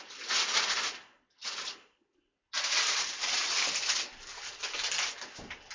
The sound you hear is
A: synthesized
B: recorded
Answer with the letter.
B